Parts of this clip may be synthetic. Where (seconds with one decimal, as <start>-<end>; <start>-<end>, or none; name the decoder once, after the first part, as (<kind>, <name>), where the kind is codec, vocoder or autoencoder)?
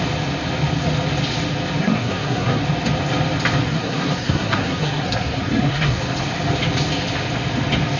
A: 1.8-2.6 (codec, SNAC); 3.7-6.0